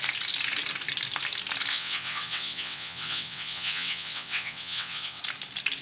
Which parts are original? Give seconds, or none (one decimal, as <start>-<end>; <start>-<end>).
0.0-1.7; 5.2-5.8